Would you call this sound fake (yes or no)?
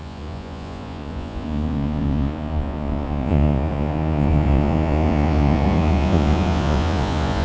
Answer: yes